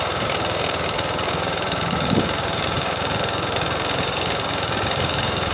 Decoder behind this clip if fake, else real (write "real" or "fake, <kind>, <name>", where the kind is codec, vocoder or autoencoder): fake, codec, DAC